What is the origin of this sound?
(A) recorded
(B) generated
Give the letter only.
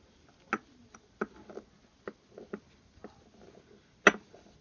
A